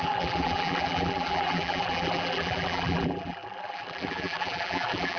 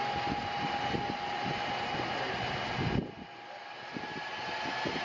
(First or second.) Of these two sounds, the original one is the second